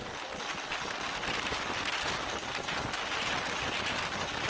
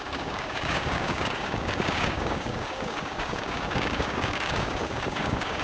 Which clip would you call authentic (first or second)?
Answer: first